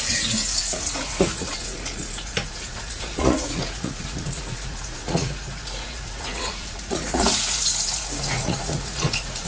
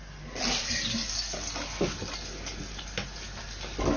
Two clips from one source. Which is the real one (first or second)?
second